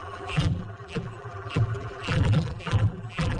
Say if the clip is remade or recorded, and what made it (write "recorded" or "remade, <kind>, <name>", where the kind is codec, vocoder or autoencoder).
remade, vocoder, BigVGAN v2